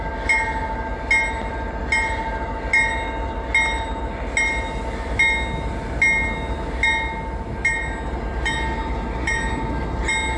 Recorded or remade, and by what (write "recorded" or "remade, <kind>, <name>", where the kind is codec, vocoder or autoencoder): recorded